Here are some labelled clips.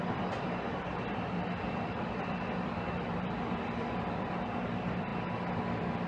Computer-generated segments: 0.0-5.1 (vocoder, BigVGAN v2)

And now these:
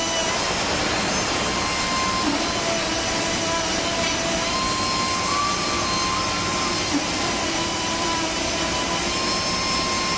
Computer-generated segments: 6.5-8.8 (vocoder, BigVGAN v2)

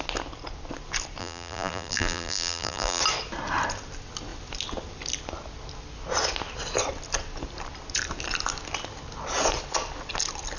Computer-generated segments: 1.2-3.0 (vocoder, BigVGAN v2)